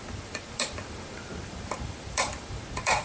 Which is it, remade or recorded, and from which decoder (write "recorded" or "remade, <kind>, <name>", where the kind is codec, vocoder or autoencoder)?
remade, vocoder, BigVGAN v2